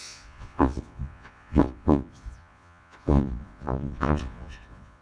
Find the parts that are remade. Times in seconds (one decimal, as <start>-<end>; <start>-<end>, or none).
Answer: 0.0-5.0